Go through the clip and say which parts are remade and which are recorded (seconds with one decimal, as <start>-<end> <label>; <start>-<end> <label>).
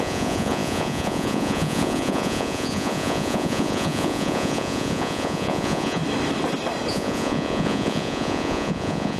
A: 0.0-6.0 remade; 6.0-6.9 recorded; 6.9-9.2 remade